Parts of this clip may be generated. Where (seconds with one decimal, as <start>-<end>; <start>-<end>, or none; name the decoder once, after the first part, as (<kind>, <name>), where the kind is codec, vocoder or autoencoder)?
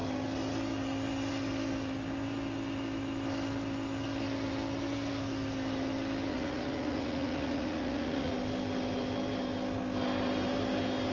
6.3-8.3 (vocoder, Vocos)